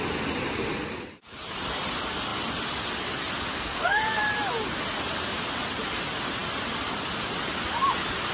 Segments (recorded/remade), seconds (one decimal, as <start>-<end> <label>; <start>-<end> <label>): 0.0-3.5 recorded; 3.5-4.2 remade; 4.2-8.3 recorded